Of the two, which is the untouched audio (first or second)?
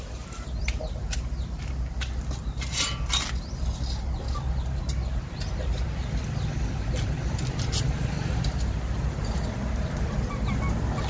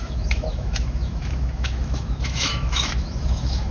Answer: first